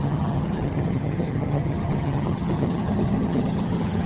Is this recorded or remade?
remade